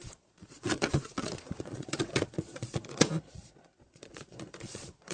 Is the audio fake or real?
fake